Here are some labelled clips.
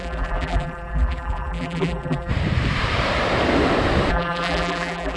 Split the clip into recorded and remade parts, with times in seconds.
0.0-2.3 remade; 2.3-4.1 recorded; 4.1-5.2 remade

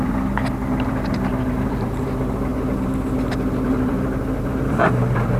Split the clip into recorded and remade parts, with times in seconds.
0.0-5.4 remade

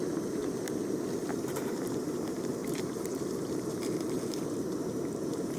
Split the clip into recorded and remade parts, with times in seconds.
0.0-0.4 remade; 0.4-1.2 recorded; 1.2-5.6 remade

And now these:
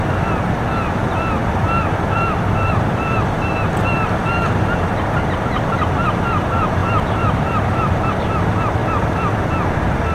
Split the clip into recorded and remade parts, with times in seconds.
0.0-1.4 recorded; 1.4-2.7 remade; 2.7-6.8 recorded; 6.8-8.1 remade; 8.1-10.1 recorded